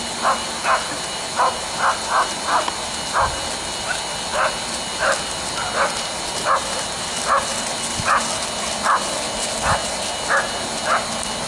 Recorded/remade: recorded